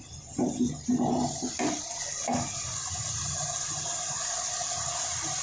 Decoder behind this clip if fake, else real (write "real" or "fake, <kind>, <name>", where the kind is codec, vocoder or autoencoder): real